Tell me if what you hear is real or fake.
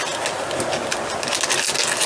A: real